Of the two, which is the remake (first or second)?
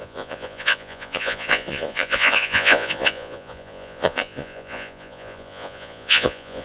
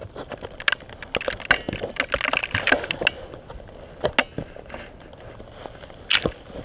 first